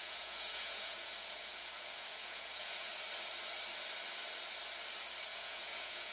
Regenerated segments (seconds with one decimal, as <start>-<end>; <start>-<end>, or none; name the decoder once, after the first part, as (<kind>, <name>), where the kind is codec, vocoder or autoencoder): 0.0-2.9 (vocoder, Vocos); 5.3-6.1